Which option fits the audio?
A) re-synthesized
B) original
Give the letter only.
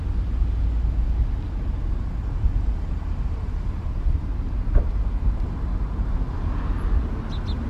B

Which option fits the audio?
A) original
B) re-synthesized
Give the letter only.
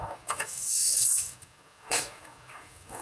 B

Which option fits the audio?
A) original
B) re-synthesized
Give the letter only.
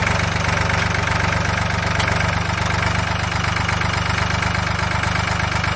A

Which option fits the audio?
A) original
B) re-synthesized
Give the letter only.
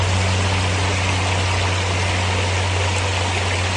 A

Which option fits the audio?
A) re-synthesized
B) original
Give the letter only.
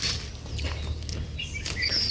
B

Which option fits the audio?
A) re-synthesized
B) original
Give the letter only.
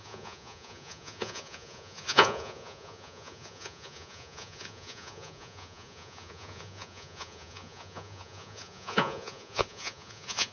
A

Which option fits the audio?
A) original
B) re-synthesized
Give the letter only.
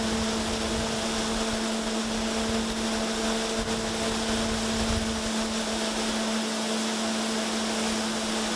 A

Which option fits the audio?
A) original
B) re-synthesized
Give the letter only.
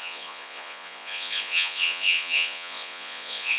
B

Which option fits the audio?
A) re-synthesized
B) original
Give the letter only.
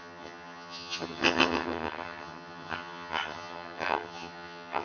A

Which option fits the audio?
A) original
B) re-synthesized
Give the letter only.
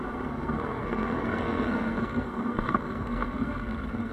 B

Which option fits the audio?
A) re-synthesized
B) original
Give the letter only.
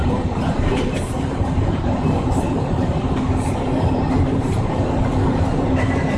A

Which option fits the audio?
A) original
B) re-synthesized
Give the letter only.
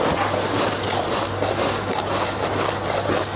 A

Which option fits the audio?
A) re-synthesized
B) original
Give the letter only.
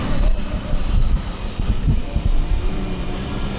A